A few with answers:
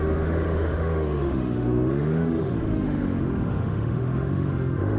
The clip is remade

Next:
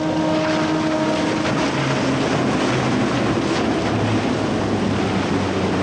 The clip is recorded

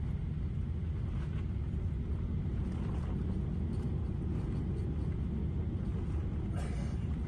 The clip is recorded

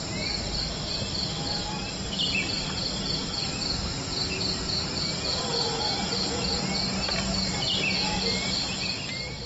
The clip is recorded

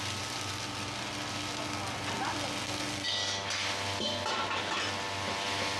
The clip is recorded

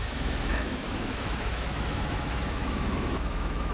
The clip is remade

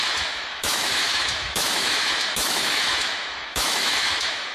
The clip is remade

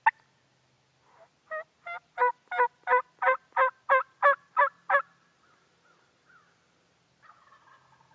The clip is recorded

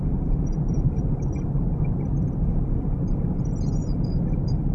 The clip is recorded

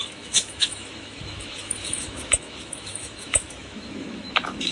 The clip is remade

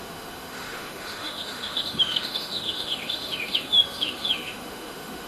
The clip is remade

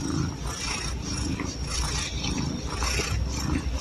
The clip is recorded